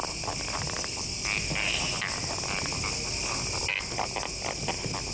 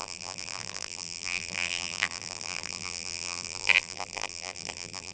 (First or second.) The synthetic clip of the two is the second